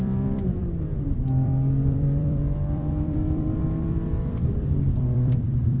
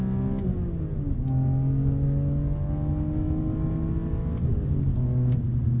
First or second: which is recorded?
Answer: second